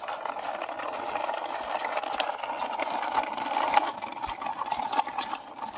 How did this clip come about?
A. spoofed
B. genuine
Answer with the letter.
B